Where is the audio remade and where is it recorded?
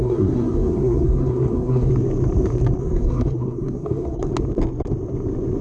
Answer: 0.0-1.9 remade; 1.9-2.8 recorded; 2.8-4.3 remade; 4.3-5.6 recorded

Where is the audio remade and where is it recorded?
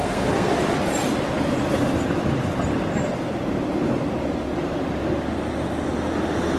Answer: 0.0-0.5 remade; 0.5-6.6 recorded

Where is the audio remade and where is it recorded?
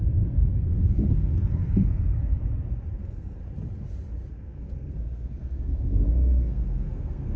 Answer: 0.0-0.4 remade; 0.4-1.1 recorded; 1.1-2.2 remade; 2.2-3.0 recorded; 3.0-3.4 remade; 3.4-4.3 recorded; 4.3-7.4 remade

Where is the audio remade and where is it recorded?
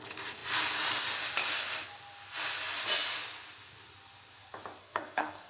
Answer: 0.0-4.8 recorded; 4.8-5.5 remade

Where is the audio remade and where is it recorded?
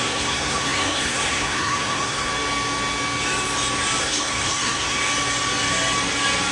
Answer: 0.0-2.3 remade; 2.3-4.0 recorded; 4.0-5.0 remade; 5.0-6.5 recorded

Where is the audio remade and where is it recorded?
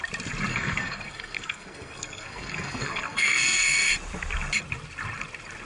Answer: 0.0-0.5 recorded; 0.5-3.9 remade; 3.9-5.7 recorded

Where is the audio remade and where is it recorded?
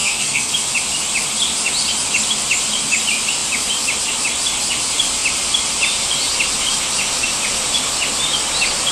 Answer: 0.0-0.5 remade; 0.5-8.9 recorded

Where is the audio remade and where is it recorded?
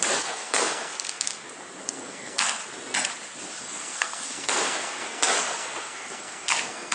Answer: 0.0-1.3 remade; 1.3-1.8 recorded; 1.8-2.6 remade; 2.6-3.6 recorded; 3.6-6.9 remade